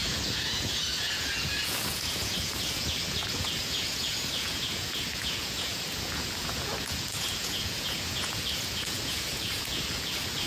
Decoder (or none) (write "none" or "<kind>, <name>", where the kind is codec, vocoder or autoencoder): vocoder, Vocos